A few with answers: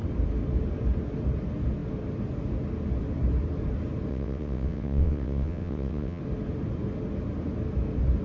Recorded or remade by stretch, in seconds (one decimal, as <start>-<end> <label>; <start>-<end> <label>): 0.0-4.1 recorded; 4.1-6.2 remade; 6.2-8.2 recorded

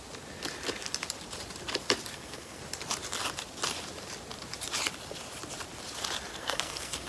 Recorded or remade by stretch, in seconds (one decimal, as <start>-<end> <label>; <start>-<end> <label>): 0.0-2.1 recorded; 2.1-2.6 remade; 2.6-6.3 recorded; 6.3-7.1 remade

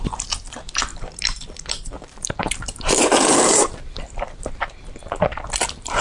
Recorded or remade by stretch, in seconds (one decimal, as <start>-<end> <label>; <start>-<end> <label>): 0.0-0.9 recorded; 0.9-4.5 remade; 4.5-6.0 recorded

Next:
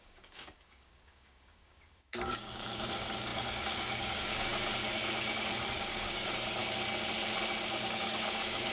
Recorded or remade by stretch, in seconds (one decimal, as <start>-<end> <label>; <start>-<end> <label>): 0.0-4.5 remade; 4.5-5.6 recorded; 5.6-6.6 remade; 6.6-7.7 recorded; 7.7-8.7 remade

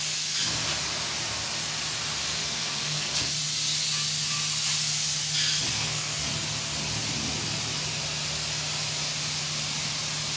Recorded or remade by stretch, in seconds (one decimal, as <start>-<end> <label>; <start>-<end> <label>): 0.0-2.4 recorded; 2.4-3.3 remade; 3.3-5.7 recorded; 5.7-6.3 remade; 6.3-10.4 recorded

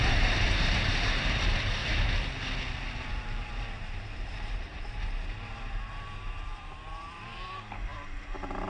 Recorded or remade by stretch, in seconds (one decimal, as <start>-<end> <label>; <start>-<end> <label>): 0.0-1.8 remade; 1.8-3.1 recorded; 3.1-8.7 remade

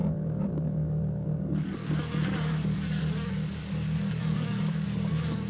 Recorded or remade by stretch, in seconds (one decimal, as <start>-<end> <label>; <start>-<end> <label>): 0.0-5.5 remade

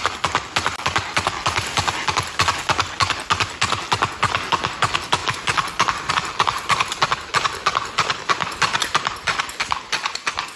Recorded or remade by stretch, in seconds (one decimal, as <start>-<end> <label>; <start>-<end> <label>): 0.0-10.6 recorded